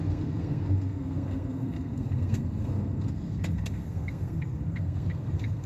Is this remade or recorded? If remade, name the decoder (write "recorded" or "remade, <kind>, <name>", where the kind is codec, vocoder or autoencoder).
remade, codec, SNAC